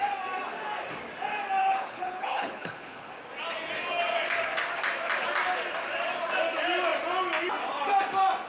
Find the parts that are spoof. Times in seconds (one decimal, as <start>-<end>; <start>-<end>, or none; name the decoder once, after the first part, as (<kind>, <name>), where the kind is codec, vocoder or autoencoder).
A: 1.6-3.1 (codec, HILCodec)